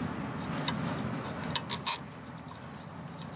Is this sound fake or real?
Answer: real